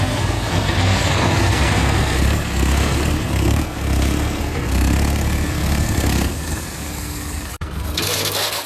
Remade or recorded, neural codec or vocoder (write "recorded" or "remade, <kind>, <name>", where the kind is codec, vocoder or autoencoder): remade, codec, SNAC